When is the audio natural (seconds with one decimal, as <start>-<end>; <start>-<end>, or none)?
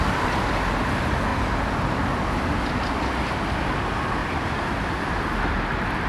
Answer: 0.0-1.3; 2.4-4.2; 5.3-6.1